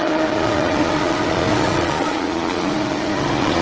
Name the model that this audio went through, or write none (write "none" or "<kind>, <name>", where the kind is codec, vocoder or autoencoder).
vocoder, Vocos